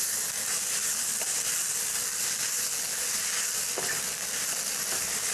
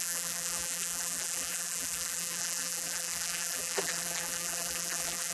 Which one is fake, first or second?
second